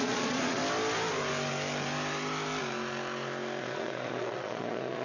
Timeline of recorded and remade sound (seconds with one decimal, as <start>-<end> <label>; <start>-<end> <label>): 0.0-0.6 remade; 0.6-3.6 recorded; 3.6-5.0 remade